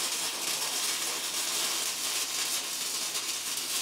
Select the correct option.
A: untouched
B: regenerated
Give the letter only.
A